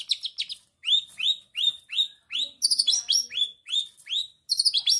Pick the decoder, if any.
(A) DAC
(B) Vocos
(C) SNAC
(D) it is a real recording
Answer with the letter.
D